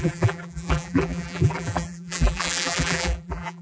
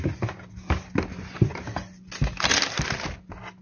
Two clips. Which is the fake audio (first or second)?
first